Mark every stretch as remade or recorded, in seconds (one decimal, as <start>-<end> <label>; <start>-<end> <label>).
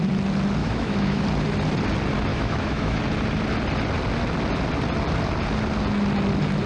0.0-0.6 recorded; 0.6-1.2 remade; 1.2-2.3 recorded; 2.3-3.0 remade; 3.0-6.7 recorded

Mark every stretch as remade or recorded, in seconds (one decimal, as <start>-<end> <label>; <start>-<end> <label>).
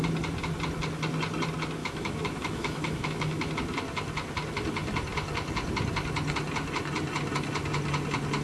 0.0-1.8 recorded; 1.8-3.5 remade; 3.5-8.4 recorded